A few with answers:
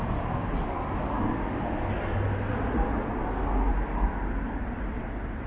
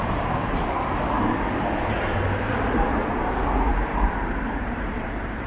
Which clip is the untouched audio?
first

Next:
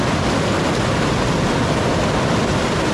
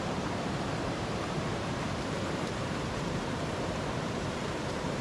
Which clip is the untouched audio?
first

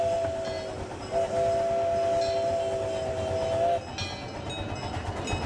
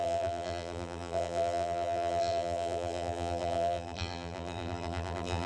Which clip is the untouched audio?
first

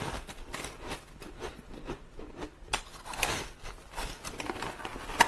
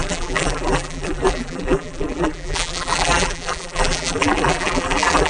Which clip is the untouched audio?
first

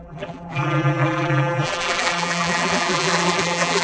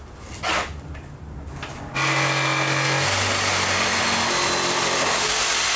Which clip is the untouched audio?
second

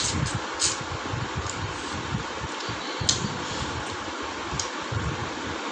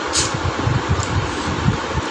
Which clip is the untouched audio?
first